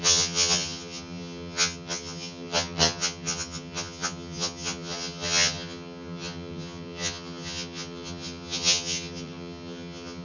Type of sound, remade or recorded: remade